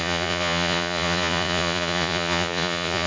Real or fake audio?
fake